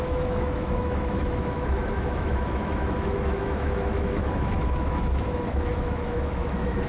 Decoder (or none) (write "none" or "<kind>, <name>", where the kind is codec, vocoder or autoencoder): autoencoder, DAC-VAE